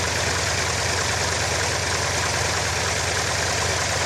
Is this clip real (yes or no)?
yes